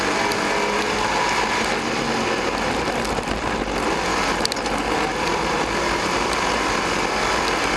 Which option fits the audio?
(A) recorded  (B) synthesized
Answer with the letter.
A